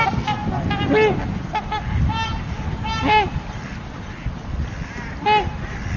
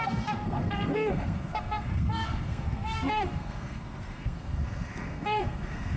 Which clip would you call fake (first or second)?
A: second